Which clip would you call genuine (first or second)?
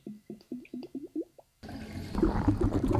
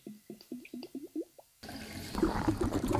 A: first